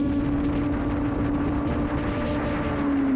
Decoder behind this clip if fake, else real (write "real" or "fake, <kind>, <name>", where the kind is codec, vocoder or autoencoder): real